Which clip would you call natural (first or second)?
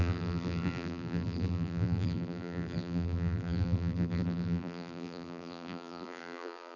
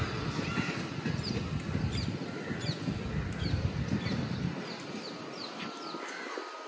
second